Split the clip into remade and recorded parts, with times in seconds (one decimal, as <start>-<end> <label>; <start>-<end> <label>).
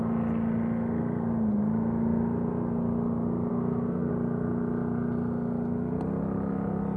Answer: 0.0-3.5 recorded; 3.5-4.1 remade; 4.1-7.0 recorded